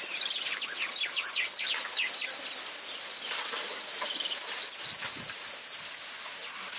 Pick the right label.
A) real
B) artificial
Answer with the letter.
A